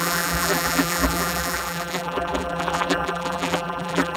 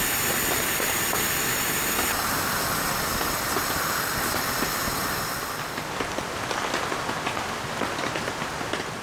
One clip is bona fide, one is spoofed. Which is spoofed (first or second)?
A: first